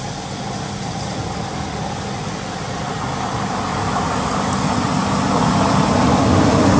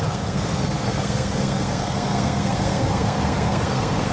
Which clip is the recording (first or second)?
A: first